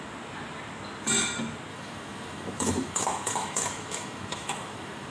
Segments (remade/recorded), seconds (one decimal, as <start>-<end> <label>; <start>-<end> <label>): 0.0-1.7 recorded; 1.7-5.1 remade